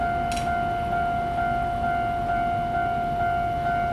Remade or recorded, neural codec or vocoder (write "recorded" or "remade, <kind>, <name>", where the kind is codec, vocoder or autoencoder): recorded